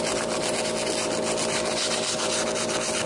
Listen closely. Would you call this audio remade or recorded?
recorded